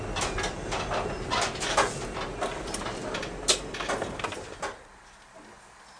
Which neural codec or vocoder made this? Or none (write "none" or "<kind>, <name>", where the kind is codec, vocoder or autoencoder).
none